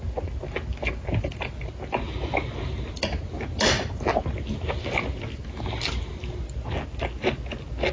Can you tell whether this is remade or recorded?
recorded